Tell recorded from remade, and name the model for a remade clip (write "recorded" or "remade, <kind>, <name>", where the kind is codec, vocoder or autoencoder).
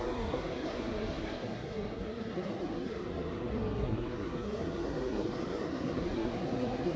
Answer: remade, codec, SNAC